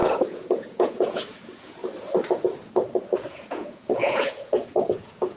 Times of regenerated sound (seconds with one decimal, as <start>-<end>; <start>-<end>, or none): 0.0-1.8; 3.3-5.4